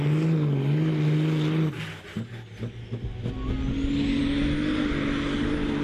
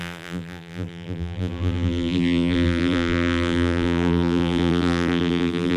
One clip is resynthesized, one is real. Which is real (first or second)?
first